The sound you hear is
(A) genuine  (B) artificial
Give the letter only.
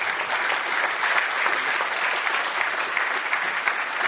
A